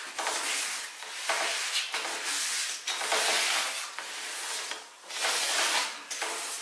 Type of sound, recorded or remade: recorded